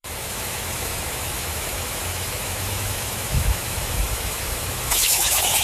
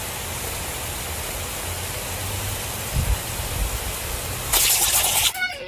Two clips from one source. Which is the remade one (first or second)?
first